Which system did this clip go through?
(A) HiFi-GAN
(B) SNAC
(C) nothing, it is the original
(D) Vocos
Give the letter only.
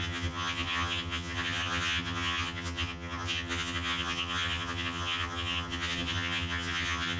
A